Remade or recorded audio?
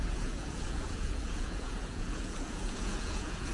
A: remade